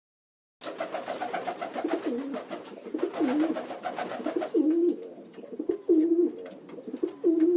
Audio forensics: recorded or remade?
recorded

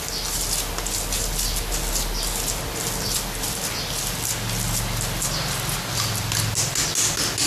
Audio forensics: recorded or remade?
recorded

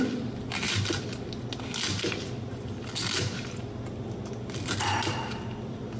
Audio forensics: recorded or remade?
recorded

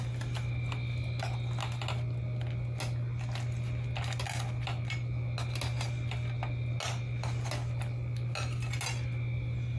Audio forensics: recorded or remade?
recorded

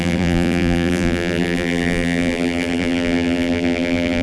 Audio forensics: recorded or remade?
remade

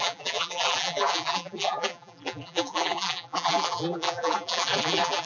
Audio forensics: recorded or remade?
remade